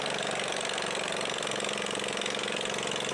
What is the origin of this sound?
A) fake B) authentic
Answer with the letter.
B